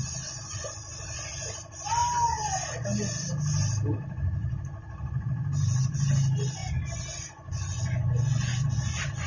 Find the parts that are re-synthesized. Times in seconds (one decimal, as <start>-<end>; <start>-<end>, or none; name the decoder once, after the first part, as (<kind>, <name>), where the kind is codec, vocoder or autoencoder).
6.6-8.7 (vocoder, Vocos)